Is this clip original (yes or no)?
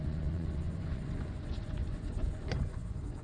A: no